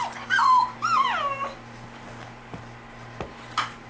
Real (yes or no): yes